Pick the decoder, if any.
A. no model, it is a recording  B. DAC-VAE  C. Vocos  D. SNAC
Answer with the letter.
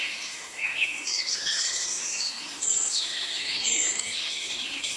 D